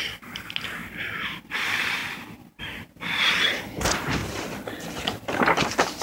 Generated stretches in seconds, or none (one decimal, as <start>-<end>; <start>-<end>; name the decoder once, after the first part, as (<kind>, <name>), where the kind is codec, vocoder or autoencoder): 0.0-0.8 (vocoder, BigVGAN v2); 1.4-2.0; 2.6-6.0